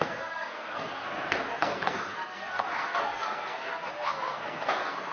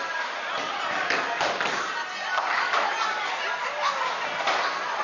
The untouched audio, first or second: second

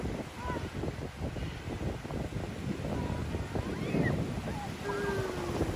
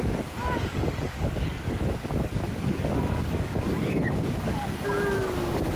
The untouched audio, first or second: first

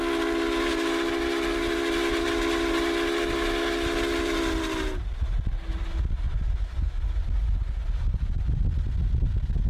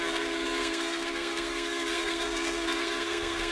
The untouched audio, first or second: first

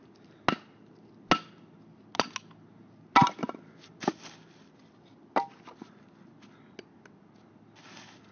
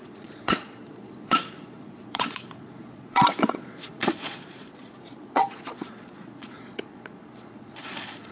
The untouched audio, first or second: first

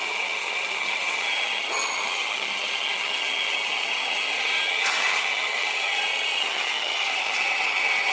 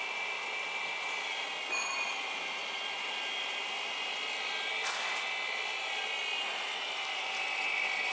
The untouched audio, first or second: second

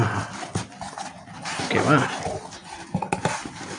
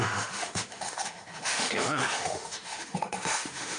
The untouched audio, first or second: first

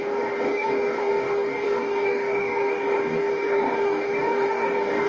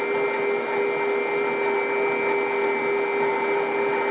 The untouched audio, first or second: second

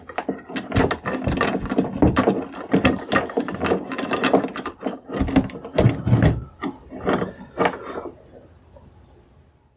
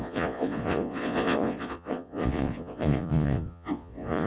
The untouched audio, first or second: first